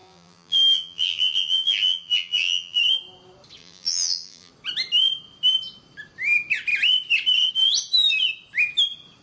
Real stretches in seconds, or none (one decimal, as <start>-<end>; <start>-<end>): 2.8-3.6; 4.5-9.2